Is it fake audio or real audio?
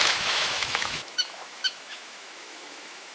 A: fake